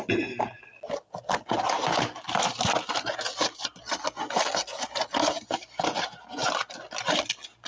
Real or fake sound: real